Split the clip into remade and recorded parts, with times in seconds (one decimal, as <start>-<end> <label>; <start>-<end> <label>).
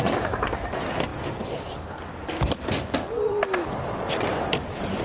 0.0-5.0 recorded